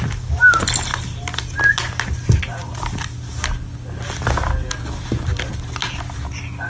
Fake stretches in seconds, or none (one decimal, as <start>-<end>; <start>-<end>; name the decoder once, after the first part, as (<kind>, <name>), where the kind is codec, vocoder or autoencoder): none